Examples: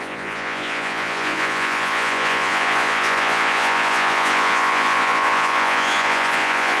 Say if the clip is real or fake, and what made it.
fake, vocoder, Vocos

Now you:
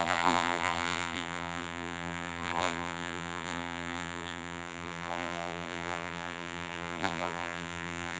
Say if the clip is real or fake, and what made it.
fake, vocoder, BigVGAN v2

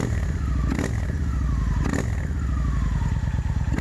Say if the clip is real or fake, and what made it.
real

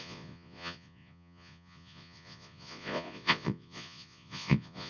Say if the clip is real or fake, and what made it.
fake, vocoder, Vocos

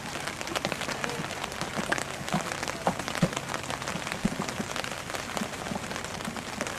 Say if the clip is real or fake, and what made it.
real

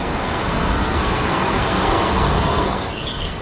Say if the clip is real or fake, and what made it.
fake, codec, SNAC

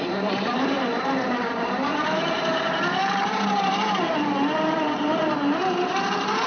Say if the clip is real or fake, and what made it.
fake, vocoder, BigVGAN v2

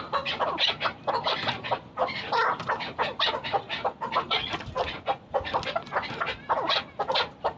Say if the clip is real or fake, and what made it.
real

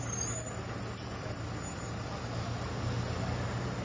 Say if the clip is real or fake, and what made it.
real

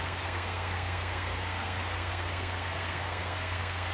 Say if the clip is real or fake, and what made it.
fake, codec, SNAC